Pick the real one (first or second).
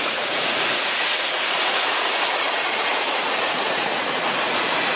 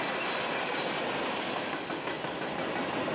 second